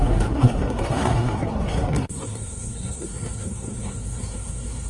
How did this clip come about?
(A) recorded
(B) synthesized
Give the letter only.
B